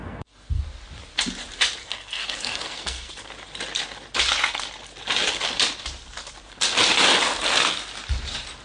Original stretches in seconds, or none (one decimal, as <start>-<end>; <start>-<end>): 0.6-1.8; 3.1-8.6